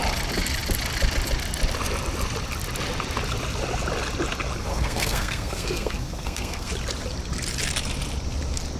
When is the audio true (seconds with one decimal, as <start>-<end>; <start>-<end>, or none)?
0.0-4.7; 6.7-8.8